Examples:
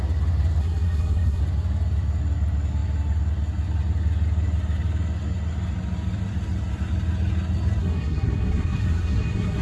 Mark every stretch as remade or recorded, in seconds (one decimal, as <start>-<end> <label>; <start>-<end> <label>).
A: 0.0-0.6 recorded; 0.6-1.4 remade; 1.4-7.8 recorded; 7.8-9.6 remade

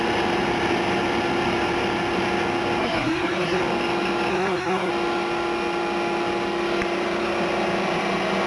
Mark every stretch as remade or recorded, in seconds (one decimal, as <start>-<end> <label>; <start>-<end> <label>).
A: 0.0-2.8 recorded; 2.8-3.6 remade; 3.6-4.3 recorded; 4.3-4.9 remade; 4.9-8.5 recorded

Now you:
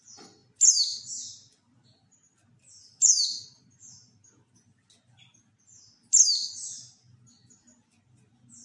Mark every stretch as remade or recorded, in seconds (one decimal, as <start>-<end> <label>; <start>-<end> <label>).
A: 0.0-8.6 recorded

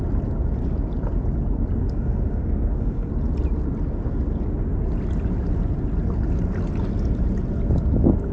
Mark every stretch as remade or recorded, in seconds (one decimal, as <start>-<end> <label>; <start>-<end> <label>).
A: 0.0-1.8 recorded; 1.8-3.1 remade; 3.1-8.3 recorded

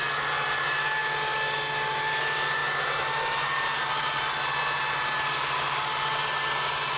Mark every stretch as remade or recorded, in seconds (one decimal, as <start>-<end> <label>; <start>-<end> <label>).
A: 0.0-7.0 recorded